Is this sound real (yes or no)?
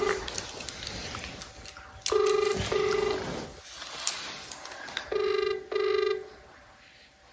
yes